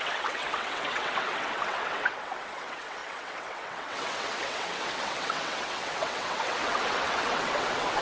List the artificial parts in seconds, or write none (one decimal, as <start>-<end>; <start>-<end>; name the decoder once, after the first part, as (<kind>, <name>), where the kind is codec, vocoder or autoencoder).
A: 0.0-8.0 (vocoder, WaveNeXt)